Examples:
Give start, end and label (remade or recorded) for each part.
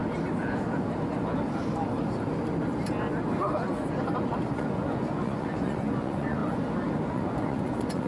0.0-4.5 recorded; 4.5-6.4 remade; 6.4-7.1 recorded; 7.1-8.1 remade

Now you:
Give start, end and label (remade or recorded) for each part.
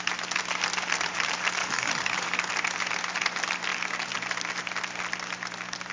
0.0-1.6 recorded; 1.6-2.4 remade; 2.4-5.9 recorded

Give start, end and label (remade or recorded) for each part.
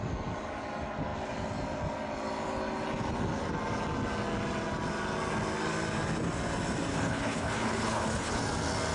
0.0-6.9 recorded; 6.9-8.4 remade; 8.4-8.9 recorded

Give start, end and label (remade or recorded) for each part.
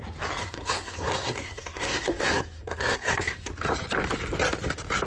0.0-0.4 recorded; 0.4-3.5 remade; 3.5-5.1 recorded